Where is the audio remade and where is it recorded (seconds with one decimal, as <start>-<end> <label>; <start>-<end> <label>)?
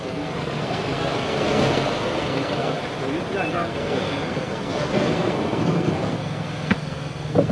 0.0-2.8 remade; 2.8-3.5 recorded; 3.5-7.5 remade